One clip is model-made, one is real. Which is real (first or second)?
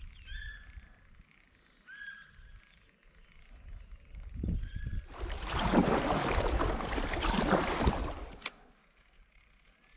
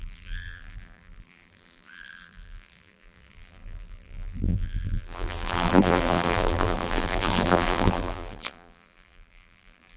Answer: first